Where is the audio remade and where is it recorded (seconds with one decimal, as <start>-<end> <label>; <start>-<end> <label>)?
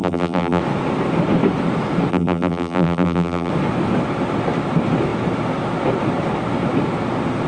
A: 0.0-0.6 remade; 0.6-2.1 recorded; 2.1-3.5 remade; 3.5-7.5 recorded